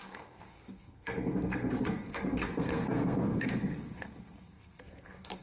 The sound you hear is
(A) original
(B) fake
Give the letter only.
B